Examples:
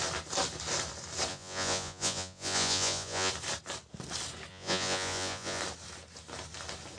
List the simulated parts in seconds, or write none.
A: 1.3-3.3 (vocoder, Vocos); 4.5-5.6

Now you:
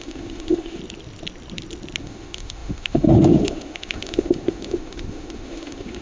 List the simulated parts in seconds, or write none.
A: 0.0-0.8 (autoencoder, DAC-VAE); 2.0-6.0

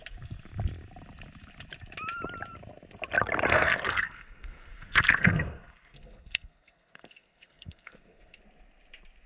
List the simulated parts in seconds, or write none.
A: 3.5-8.4 (codec, SNAC)